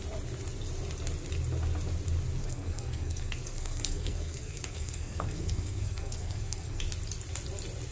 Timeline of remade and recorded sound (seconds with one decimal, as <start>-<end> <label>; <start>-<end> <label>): 0.0-2.4 recorded; 2.4-6.8 remade; 6.8-7.9 recorded